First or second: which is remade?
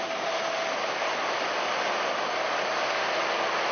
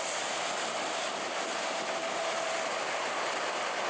second